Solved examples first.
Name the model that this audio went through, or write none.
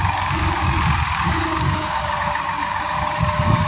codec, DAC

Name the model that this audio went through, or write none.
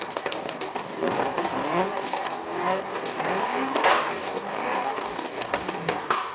codec, DAC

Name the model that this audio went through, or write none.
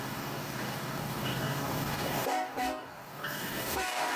codec, DAC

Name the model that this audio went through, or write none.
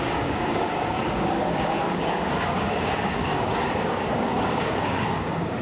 codec, DAC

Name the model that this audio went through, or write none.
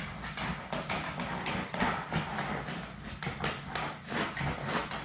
none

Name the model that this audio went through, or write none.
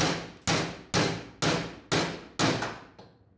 none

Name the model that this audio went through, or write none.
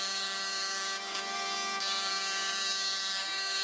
codec, DAC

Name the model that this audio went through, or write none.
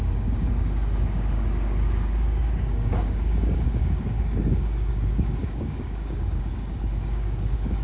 codec, DAC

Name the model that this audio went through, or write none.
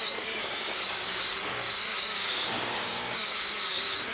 codec, DAC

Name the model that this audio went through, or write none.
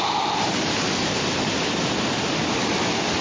none